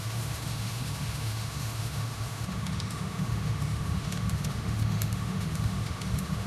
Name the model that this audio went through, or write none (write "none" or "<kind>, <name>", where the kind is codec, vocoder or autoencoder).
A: autoencoder, DAC-VAE